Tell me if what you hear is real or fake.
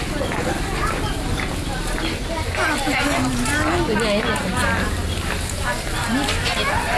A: real